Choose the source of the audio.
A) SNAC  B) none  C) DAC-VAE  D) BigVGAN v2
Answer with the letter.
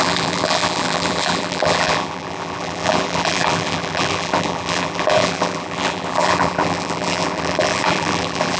D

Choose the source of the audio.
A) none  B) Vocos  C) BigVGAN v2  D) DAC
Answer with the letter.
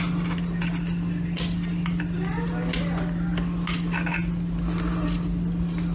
A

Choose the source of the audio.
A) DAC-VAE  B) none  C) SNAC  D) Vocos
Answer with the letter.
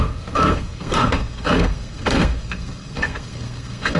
C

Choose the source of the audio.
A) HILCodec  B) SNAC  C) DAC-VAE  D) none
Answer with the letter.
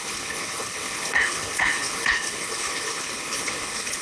A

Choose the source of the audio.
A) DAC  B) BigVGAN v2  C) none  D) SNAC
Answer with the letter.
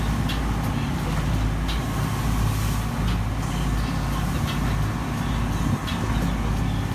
C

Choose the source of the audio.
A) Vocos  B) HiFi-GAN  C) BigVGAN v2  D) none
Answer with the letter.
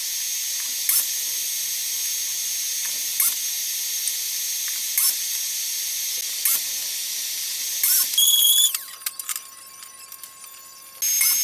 D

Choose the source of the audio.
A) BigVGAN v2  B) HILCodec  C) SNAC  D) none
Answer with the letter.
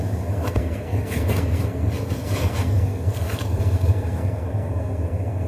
C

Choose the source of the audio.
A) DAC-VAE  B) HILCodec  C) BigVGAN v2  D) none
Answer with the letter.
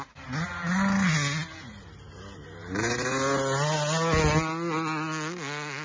D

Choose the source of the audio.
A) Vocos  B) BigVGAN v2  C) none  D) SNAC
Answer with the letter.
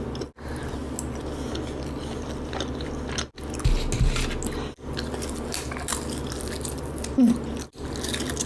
C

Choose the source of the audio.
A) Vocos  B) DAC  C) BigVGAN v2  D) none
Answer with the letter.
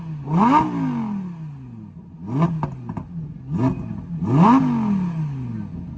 D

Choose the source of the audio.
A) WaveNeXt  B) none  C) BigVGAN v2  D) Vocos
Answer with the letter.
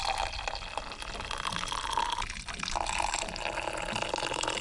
B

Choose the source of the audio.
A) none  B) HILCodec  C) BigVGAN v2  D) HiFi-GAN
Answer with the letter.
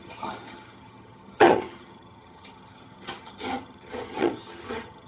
D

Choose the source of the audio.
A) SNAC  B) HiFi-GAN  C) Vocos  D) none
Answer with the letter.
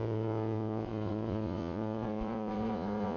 C